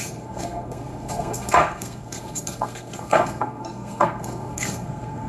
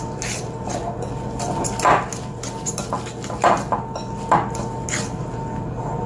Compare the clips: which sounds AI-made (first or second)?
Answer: first